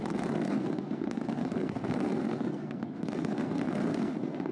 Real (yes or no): no